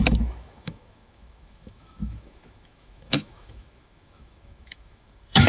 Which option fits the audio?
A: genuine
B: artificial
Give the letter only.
B